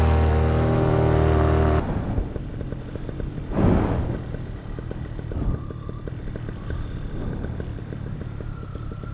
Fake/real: real